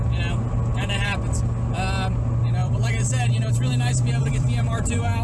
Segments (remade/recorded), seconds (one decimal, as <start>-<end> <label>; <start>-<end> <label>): 0.0-0.7 recorded; 0.7-1.2 remade; 1.2-2.6 recorded; 2.6-5.2 remade